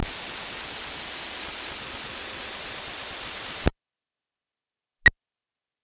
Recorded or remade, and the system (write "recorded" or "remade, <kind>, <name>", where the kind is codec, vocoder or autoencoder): recorded